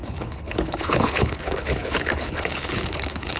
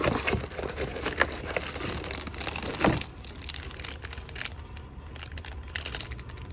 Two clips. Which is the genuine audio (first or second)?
second